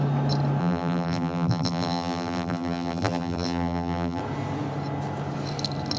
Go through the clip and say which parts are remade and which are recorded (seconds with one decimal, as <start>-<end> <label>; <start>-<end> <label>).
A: 0.0-0.6 recorded; 0.6-4.2 remade; 4.2-6.0 recorded